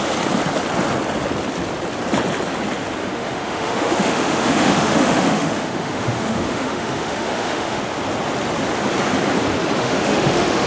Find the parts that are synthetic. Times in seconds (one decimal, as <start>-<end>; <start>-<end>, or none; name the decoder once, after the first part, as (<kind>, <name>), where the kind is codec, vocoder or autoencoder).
3.0-7.8 (autoencoder, DAC-VAE); 9.8-10.7